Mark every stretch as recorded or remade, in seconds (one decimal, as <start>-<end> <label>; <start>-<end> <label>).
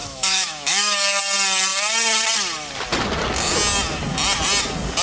0.0-1.2 remade; 1.2-5.0 recorded